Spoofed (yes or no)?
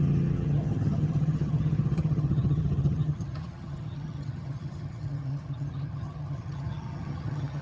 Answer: yes